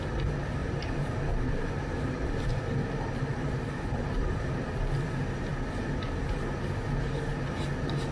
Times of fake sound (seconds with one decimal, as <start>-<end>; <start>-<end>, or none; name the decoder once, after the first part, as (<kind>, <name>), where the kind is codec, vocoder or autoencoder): 0.6-2.6 (vocoder, BigVGAN v2); 3.3-4.7